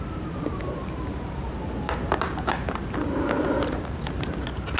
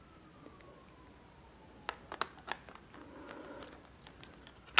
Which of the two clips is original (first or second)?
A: second